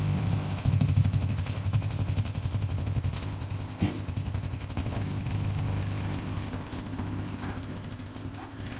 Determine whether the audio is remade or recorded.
remade